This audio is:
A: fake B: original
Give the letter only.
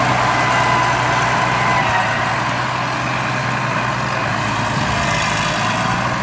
B